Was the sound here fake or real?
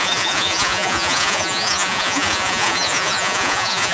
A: fake